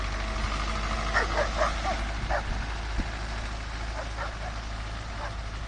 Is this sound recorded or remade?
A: recorded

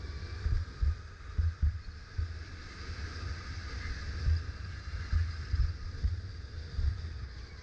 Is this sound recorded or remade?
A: recorded